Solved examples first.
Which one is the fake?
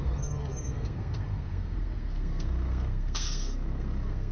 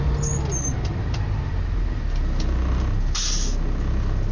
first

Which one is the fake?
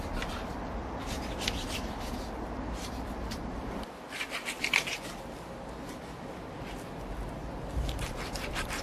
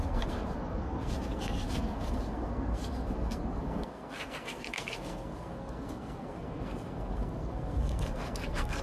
second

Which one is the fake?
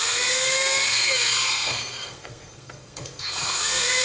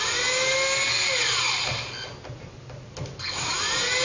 first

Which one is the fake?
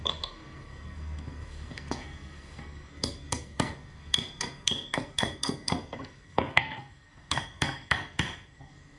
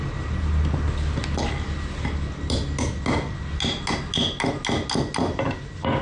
first